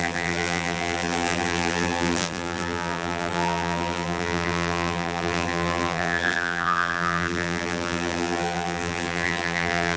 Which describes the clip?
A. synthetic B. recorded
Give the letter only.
A